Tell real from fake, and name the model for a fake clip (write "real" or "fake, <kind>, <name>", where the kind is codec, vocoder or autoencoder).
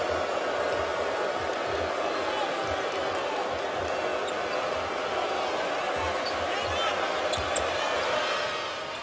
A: real